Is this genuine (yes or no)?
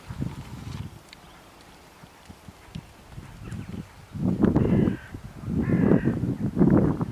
yes